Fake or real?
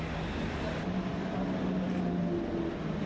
real